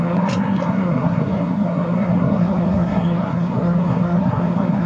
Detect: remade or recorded remade